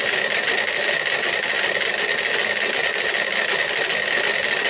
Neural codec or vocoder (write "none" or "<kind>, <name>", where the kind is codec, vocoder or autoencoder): none